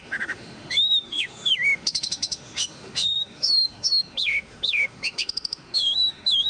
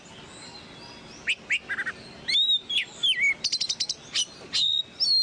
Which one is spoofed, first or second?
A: first